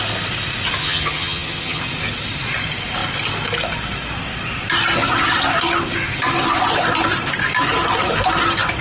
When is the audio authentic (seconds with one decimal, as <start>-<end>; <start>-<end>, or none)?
0.0-0.8; 1.8-8.8